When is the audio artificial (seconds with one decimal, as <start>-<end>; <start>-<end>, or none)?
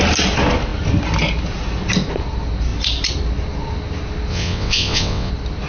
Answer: 4.3-5.3